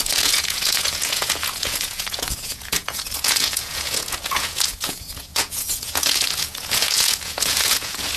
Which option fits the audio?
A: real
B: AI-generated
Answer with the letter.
B